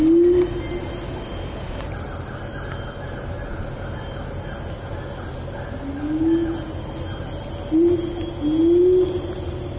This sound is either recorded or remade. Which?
recorded